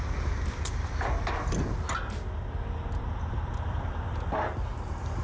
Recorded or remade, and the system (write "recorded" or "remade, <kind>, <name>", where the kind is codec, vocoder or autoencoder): recorded